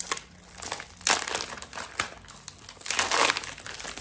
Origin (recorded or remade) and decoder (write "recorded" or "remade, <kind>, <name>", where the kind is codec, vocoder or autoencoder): recorded